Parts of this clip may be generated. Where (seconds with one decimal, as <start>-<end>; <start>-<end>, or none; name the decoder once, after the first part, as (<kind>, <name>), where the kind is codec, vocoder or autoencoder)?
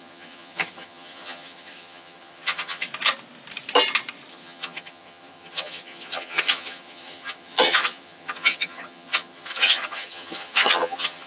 0.0-2.9 (vocoder, HiFi-GAN); 4.3-11.3